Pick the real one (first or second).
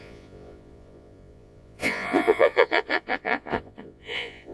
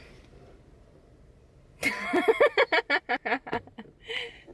second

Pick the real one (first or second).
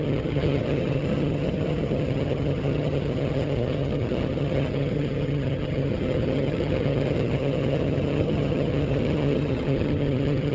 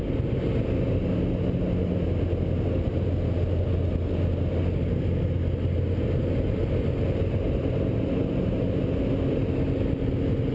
second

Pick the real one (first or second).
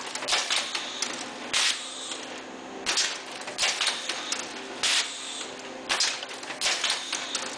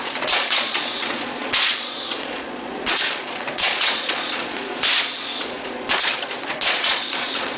first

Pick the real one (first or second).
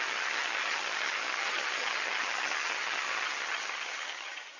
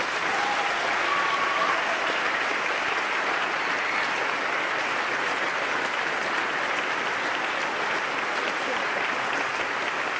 second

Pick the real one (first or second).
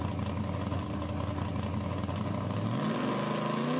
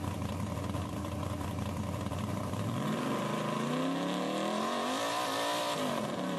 first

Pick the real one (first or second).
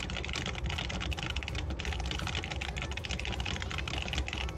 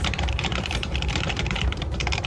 first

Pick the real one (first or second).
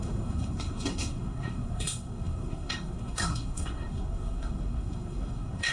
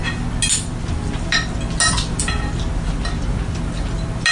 second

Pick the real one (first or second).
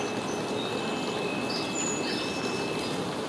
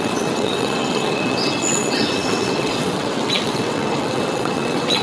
first